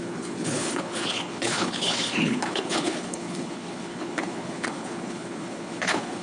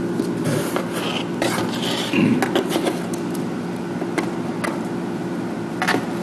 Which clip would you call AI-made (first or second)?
first